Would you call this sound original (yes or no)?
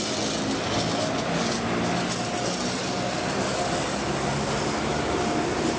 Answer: yes